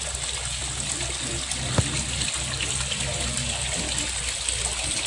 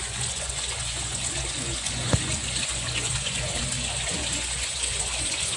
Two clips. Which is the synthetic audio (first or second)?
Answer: second